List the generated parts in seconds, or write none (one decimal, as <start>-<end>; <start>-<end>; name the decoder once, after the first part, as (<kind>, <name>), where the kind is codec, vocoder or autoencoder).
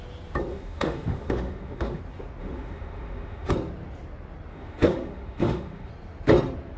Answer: 0.5-2.0 (autoencoder, DAC-VAE); 2.4-3.5; 4.5-5.9